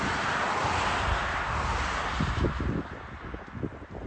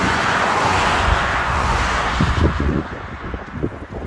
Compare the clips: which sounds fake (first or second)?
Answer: second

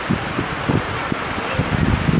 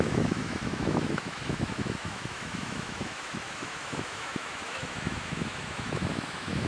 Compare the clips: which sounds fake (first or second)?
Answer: second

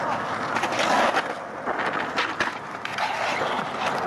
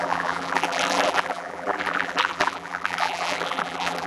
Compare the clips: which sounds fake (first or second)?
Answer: second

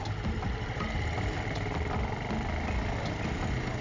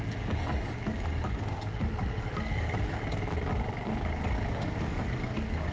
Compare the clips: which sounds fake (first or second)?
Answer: second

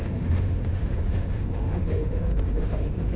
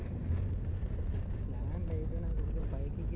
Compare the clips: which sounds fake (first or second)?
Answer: first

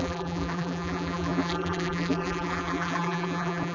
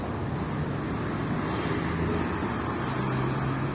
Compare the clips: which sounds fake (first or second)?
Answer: first